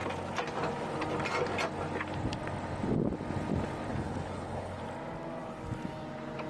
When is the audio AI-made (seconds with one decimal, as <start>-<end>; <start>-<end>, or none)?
3.9-4.8